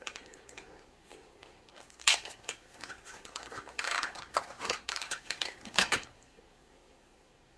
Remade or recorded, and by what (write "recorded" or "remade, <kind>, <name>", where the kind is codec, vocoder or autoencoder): remade, codec, SNAC